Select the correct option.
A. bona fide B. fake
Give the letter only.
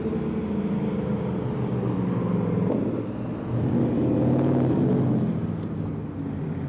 A